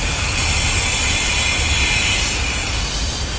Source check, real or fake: real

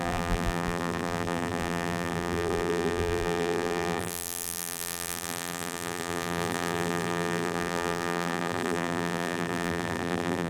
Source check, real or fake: fake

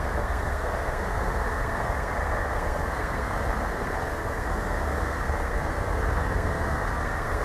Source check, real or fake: fake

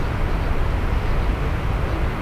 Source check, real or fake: real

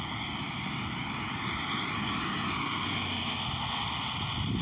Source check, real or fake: real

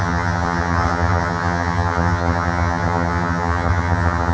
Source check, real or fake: fake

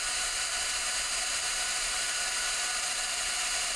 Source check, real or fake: fake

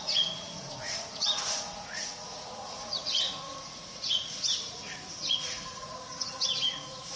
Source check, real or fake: fake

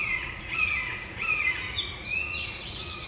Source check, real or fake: fake